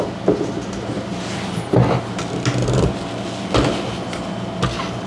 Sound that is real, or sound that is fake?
real